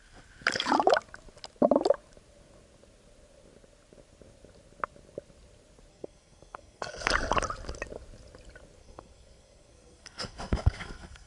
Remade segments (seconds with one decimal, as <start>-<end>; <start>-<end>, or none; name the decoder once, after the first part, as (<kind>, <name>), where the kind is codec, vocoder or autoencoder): 5.9-7.1 (codec, SNAC); 8.8-11.3